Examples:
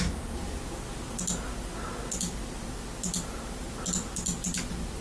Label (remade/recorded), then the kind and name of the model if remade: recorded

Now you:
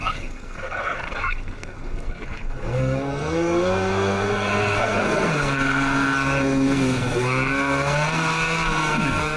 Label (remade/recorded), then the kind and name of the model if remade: remade, codec, SNAC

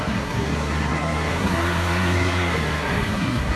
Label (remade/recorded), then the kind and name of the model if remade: remade, codec, SNAC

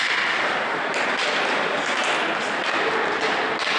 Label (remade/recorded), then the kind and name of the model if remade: recorded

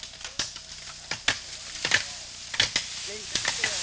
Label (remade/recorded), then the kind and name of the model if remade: recorded